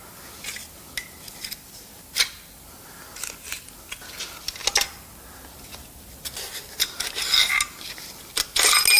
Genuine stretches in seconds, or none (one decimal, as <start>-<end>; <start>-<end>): 0.0-9.0